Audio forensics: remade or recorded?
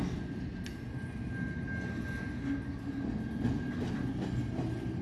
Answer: recorded